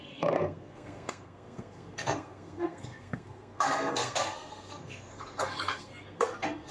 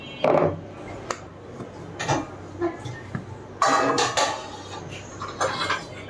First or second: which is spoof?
first